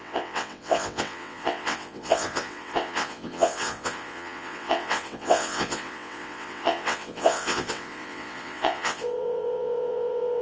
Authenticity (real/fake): fake